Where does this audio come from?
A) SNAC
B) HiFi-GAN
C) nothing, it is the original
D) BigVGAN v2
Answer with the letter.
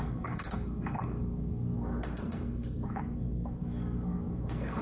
A